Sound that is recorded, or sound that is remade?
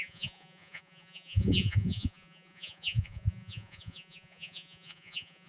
remade